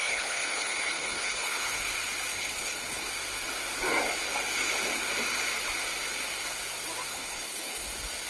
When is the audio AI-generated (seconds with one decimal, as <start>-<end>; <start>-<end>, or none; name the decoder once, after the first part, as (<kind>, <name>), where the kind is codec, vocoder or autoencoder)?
0.0-1.8 (codec, HILCodec); 2.3-3.1; 7.1-7.9